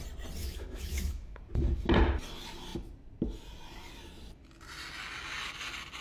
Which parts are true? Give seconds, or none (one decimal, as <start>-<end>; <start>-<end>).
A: 0.0-0.4; 1.4-6.0